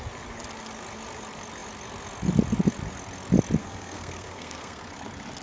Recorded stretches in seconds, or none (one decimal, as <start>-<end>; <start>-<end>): 0.0-3.6; 4.8-5.4